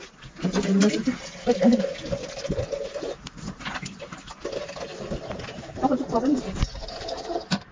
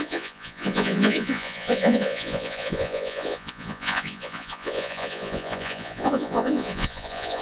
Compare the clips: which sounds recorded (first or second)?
first